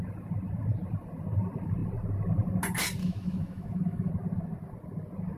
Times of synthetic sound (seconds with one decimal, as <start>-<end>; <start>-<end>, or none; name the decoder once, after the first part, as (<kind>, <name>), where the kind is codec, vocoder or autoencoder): 3.0-4.1 (autoencoder, DAC-VAE)